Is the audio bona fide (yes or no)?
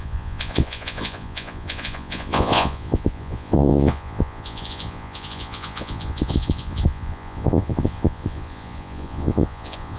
no